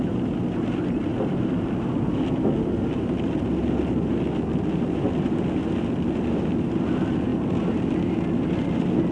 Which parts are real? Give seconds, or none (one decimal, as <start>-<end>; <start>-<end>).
0.0-9.1